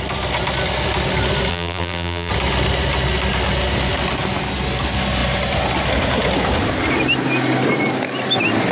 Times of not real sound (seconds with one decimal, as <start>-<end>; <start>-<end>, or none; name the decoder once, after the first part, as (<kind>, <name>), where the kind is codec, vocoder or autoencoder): 1.5-2.3 (vocoder, BigVGAN v2)